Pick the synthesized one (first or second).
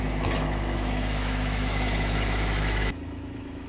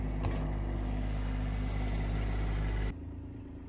first